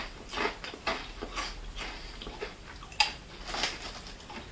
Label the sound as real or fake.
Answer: real